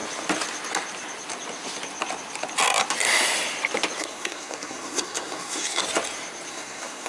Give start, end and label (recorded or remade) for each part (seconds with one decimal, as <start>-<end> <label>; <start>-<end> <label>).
0.0-4.0 recorded; 4.0-5.8 remade; 5.8-6.5 recorded; 6.5-7.1 remade